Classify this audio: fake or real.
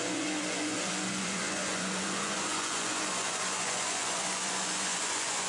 fake